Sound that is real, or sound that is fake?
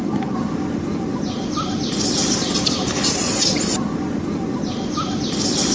real